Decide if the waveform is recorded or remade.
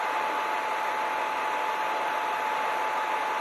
recorded